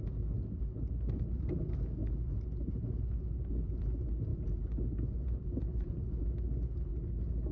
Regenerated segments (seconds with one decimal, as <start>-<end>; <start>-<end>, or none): 4.3-6.3